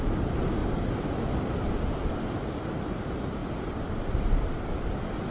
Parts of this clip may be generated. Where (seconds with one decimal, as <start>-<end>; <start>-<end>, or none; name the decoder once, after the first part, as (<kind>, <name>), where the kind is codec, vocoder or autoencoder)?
none